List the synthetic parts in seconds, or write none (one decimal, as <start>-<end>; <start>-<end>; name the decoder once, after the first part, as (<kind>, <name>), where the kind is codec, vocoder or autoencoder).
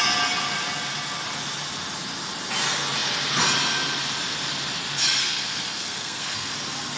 5.2-6.5 (codec, SNAC)